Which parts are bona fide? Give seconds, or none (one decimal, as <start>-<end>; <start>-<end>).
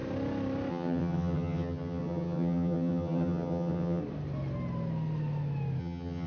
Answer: 0.0-0.7; 4.0-5.8